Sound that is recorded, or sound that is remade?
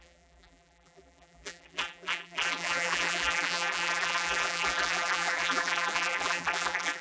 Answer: remade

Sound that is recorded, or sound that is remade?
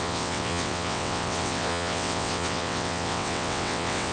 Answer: remade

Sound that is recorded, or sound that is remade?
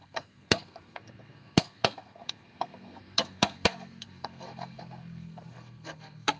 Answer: remade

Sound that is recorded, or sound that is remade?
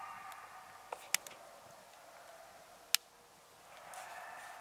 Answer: recorded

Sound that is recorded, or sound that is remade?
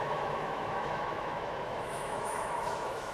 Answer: remade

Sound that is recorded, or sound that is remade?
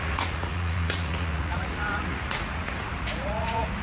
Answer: remade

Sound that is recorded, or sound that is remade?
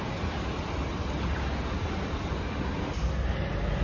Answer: recorded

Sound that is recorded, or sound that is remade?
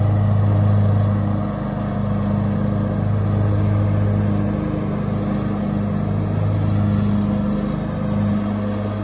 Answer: recorded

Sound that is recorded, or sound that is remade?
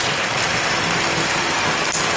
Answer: remade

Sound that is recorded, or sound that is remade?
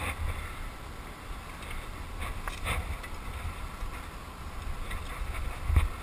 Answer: recorded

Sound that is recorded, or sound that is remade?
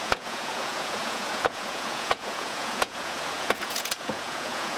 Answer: remade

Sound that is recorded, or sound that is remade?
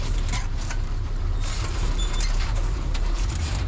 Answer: remade